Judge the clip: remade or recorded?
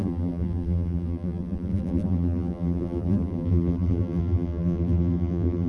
remade